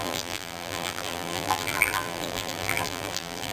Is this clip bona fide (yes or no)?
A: no